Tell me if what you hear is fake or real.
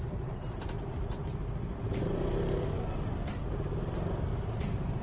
real